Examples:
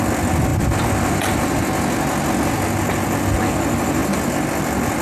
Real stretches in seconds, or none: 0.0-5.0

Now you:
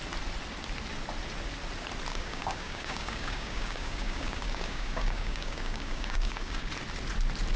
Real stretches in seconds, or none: 0.0-2.1; 6.7-7.6

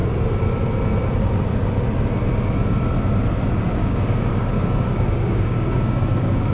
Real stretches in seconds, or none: 0.0-3.6

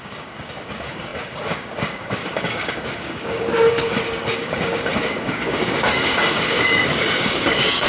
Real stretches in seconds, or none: none

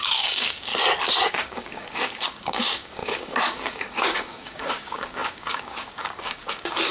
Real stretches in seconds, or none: 0.7-1.3

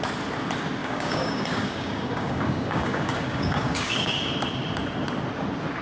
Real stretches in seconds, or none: 0.0-0.8; 4.3-5.8

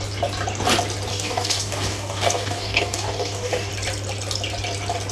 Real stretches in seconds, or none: 0.0-1.1; 3.7-5.1

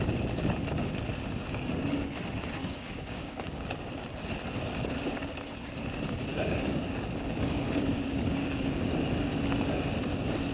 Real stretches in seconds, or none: 0.0-2.6; 3.7-6.3; 8.9-10.5